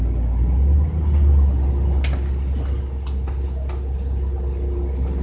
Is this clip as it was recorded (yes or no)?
yes